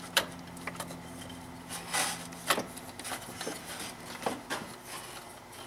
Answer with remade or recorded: recorded